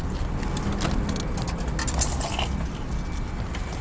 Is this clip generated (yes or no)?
no